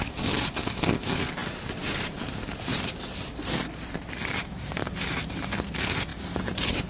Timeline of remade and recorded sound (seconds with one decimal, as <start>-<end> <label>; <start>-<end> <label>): 0.0-1.4 recorded; 1.4-5.5 remade; 5.5-6.1 recorded; 6.1-6.9 remade